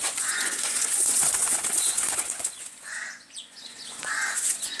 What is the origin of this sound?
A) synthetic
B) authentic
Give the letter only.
A